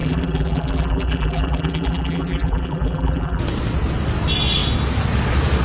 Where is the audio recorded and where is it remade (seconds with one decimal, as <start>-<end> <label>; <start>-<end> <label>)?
0.0-3.4 remade; 3.4-5.6 recorded